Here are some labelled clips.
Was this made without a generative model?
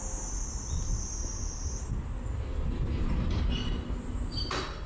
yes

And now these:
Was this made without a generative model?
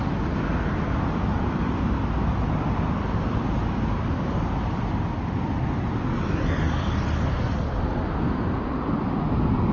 yes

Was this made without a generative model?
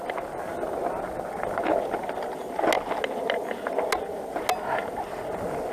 yes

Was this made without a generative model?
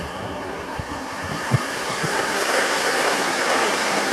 no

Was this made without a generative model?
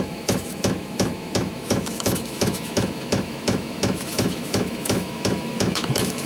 no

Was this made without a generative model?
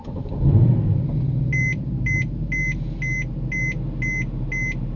yes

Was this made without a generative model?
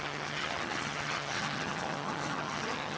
no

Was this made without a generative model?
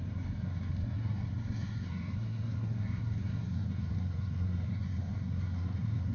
no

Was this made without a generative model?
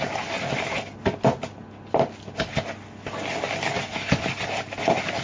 yes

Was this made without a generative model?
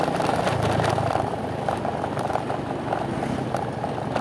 yes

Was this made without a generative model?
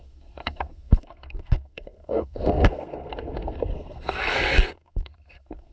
no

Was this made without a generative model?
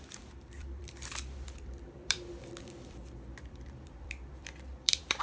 no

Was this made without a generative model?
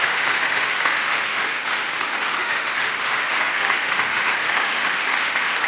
no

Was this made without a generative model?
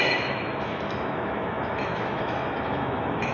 no